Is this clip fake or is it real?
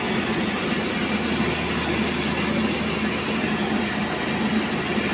real